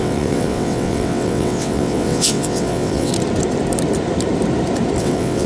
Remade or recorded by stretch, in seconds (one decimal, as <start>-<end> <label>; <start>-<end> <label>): 0.0-3.1 remade; 3.1-5.0 recorded; 5.0-5.5 remade

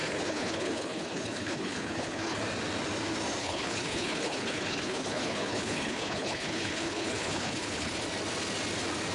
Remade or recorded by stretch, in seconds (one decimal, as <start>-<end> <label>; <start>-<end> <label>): 0.0-2.4 remade; 2.4-3.4 recorded; 3.4-8.0 remade; 8.0-9.1 recorded

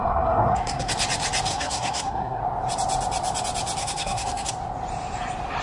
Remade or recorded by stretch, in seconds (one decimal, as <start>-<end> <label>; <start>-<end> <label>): 0.0-0.9 remade; 0.9-1.5 recorded; 1.5-2.4 remade; 2.4-3.8 recorded; 3.8-4.5 remade; 4.5-5.6 recorded

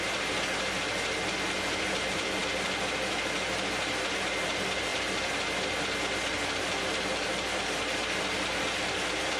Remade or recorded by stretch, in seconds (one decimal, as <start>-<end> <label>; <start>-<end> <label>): 0.0-4.9 recorded; 4.9-6.0 remade; 6.0-9.4 recorded

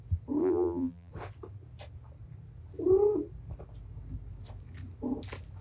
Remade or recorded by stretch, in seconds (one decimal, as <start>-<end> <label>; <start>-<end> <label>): 0.0-0.4 recorded; 0.4-1.1 remade; 1.1-5.6 recorded

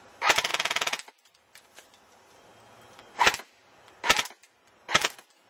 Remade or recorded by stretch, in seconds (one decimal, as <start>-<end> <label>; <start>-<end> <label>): 0.0-0.5 remade; 0.5-1.1 recorded; 1.1-2.5 remade; 2.5-4.8 recorded; 4.8-5.5 remade

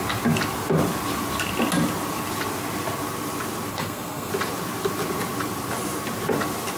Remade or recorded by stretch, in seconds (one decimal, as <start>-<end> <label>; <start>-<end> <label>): 0.0-3.7 recorded; 3.7-4.3 remade; 4.3-6.8 recorded

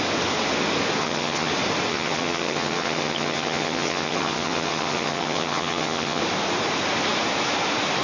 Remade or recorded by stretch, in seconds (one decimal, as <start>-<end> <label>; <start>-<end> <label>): 0.0-1.0 recorded; 1.0-1.5 remade; 1.5-1.9 recorded; 1.9-6.2 remade; 6.2-8.0 recorded